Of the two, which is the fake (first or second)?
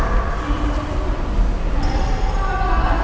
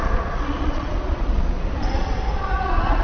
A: second